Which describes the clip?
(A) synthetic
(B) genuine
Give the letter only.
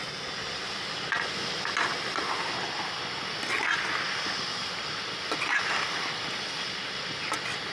B